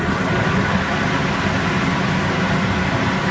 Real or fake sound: real